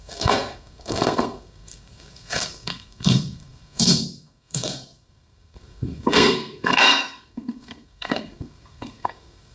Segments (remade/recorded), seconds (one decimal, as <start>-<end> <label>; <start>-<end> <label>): 0.0-9.5 remade